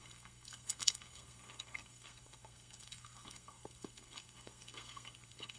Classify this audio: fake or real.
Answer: fake